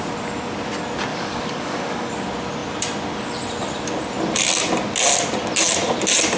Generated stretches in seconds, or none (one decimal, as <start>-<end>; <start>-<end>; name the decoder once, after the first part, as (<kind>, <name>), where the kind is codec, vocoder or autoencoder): 1.1-2.1 (codec, DAC)

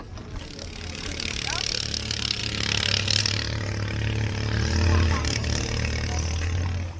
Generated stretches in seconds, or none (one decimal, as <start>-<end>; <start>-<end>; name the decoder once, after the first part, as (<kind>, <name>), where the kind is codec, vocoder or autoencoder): none

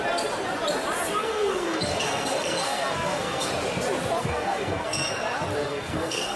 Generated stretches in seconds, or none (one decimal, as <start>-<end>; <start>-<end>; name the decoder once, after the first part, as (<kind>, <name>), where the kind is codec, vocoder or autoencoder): 1.2-3.5 (codec, SNAC); 4.2-5.1; 5.6-6.4

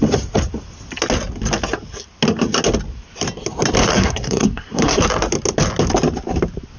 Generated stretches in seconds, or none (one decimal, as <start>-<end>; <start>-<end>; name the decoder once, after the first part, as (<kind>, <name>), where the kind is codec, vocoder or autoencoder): 3.9-5.0 (codec, SNAC)